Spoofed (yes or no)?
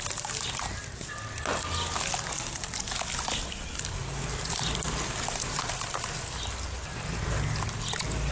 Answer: no